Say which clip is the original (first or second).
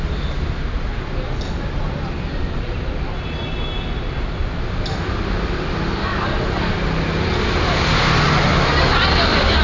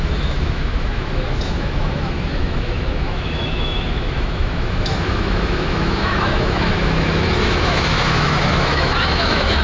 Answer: first